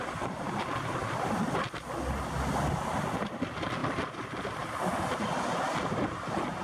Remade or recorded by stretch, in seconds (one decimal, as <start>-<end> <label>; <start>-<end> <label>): 0.0-6.6 recorded